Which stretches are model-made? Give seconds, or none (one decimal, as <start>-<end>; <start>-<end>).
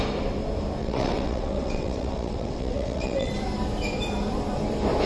0.8-3.3